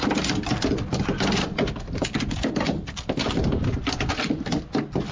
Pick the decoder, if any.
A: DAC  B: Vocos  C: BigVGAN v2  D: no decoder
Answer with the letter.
D